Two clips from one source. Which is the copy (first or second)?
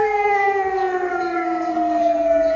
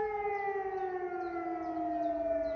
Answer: first